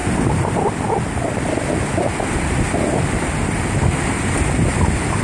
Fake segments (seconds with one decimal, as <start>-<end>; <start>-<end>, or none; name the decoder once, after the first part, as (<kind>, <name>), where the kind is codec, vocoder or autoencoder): none